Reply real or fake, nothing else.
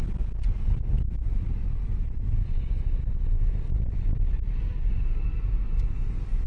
real